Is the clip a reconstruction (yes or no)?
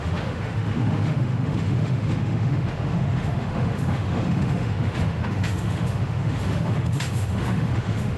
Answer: yes